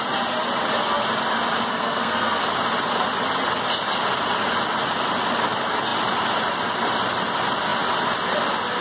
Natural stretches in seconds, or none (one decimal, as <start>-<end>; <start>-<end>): 0.0-1.7; 2.4-8.8